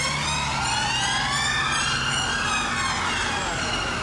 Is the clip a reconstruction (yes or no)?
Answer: no